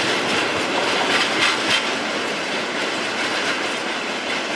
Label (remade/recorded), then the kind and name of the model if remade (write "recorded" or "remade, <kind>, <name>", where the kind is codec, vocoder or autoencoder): recorded